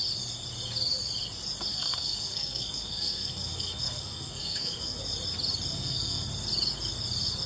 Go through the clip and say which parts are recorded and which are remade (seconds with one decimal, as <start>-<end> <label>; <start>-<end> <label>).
0.0-1.7 recorded; 1.7-5.0 remade; 5.0-5.7 recorded; 5.7-6.3 remade; 6.3-7.5 recorded